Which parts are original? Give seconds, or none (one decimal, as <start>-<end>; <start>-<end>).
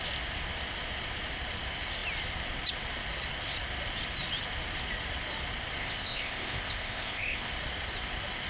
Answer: 0.0-5.8; 7.5-8.5